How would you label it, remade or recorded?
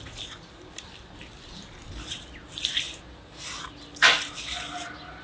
recorded